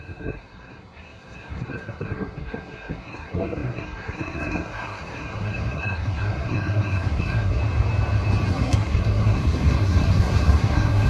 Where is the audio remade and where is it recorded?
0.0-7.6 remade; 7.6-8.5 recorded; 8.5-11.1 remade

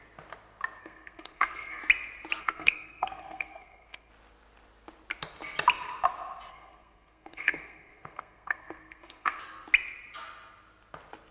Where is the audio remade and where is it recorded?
0.0-0.8 recorded; 0.8-1.8 remade; 1.8-2.4 recorded; 2.4-4.1 remade; 4.1-6.5 recorded; 6.5-9.4 remade; 9.4-11.3 recorded